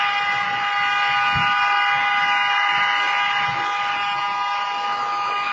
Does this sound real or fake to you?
real